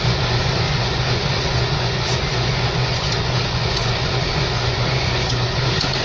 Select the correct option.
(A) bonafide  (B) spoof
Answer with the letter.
B